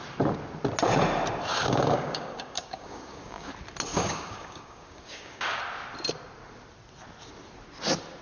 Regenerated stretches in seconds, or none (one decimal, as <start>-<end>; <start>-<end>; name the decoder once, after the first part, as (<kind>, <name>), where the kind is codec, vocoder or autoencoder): 1.5-3.5 (codec, DAC); 3.9-5.6